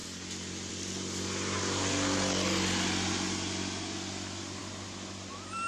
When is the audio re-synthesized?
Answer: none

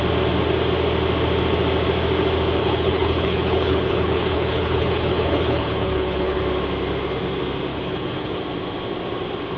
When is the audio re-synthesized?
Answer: 2.6-6.4 (codec, HILCodec); 7.7-8.4

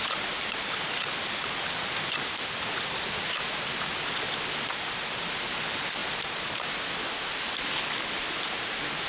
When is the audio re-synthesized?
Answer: 6.0-7.7 (vocoder, BigVGAN v2)